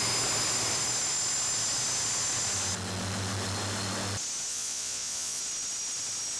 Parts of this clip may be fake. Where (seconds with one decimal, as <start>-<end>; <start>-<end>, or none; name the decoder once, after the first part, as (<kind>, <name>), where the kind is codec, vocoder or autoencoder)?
4.5-5.4 (vocoder, Vocos)